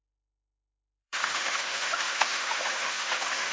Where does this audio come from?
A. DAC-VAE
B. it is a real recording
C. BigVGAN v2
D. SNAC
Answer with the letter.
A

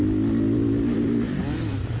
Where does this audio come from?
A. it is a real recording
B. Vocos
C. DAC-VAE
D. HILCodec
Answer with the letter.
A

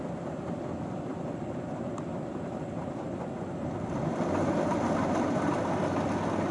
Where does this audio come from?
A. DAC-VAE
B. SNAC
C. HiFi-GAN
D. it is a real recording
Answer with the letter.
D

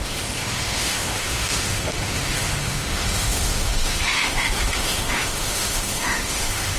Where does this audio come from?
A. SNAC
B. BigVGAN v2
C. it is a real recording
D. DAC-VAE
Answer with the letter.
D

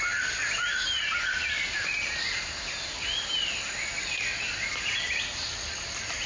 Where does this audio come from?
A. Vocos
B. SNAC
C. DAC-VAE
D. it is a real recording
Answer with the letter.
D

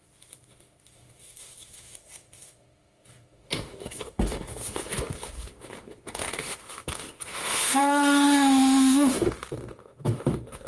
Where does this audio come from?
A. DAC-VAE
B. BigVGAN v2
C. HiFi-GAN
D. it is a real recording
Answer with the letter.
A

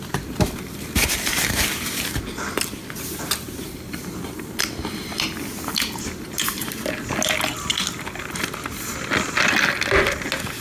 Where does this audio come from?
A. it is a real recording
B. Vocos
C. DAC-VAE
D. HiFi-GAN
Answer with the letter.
A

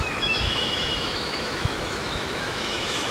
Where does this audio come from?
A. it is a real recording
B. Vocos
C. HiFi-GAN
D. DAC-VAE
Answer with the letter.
D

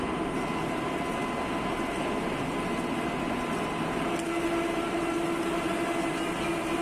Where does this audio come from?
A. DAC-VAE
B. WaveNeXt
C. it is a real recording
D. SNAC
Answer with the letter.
C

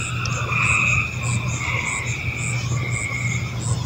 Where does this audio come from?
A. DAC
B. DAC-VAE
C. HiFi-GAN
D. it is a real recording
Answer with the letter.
D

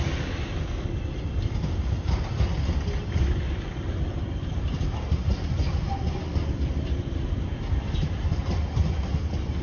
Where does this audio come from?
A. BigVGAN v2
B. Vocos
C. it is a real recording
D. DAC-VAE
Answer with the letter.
C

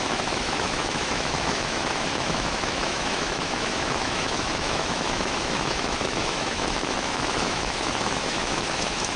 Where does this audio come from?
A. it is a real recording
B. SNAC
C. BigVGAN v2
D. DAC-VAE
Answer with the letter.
D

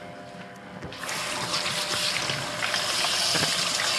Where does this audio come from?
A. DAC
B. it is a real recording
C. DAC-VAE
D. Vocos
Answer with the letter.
B